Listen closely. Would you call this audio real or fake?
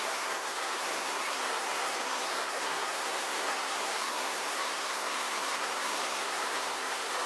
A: fake